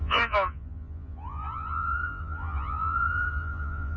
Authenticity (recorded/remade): remade